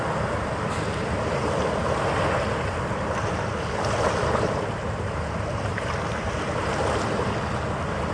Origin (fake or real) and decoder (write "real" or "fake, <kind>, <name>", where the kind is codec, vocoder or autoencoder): real